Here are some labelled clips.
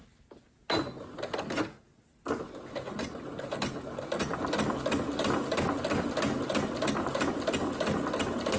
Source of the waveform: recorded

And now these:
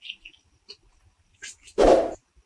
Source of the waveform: recorded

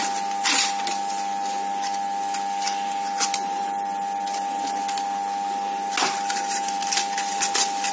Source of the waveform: recorded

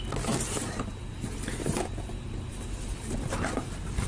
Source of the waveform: recorded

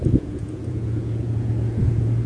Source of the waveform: remade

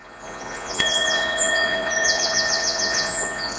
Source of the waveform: remade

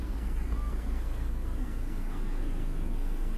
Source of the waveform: remade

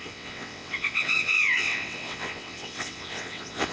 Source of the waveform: remade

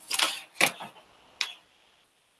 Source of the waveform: recorded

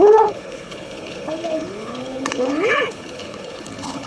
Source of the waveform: remade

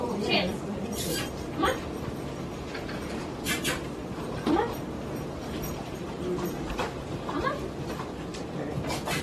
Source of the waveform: remade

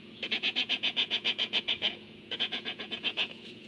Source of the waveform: remade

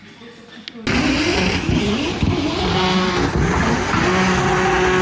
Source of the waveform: recorded